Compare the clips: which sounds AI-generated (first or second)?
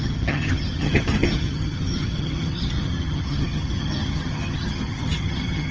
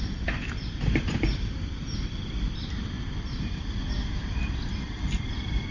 first